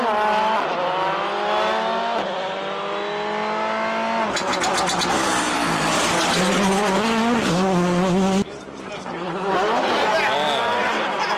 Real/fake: real